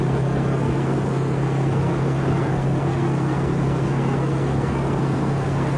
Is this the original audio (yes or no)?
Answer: no